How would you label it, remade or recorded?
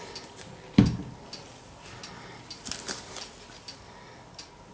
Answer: recorded